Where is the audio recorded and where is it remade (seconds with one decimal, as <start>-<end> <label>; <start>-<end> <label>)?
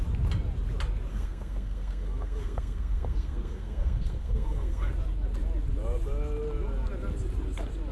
0.0-1.1 recorded; 1.1-4.9 remade; 4.9-7.9 recorded